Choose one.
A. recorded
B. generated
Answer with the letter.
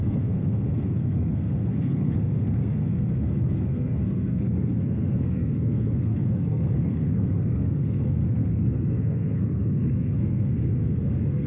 B